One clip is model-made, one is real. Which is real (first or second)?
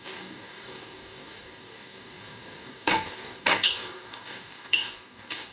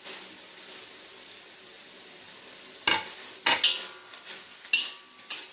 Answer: second